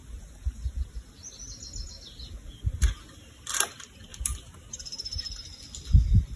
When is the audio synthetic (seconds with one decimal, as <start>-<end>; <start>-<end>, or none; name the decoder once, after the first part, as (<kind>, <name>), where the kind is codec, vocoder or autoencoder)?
0.0-1.1 (vocoder, BigVGAN v2); 4.1-5.6